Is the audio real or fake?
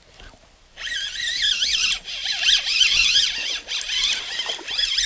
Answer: real